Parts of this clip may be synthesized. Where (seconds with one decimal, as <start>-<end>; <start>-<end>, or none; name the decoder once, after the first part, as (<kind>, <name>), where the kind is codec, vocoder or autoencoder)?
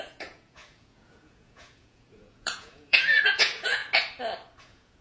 0.0-3.8 (vocoder, Vocos); 4.6-5.0